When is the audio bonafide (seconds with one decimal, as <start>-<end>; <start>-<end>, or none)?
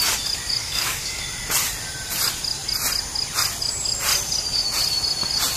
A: 0.0-0.6; 1.2-5.6